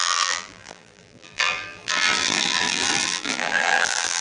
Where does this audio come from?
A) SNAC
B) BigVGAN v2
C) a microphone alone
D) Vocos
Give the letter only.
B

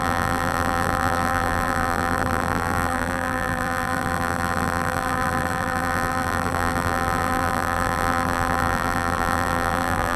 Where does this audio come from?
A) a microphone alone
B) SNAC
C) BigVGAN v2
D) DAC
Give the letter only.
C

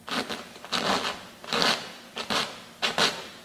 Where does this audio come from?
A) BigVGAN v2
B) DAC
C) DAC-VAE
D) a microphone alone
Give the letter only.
A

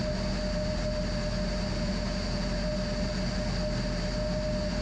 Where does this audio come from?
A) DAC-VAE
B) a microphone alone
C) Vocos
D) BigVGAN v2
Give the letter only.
B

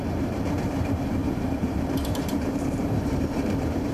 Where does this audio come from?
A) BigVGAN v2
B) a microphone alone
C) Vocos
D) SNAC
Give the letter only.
A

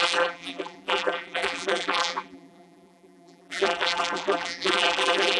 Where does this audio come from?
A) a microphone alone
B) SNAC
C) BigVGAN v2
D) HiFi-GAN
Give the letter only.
C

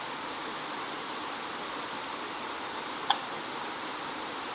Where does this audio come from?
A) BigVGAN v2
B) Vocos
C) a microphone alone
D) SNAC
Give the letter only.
C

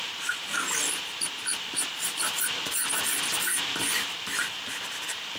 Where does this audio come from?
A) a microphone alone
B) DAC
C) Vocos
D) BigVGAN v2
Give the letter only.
D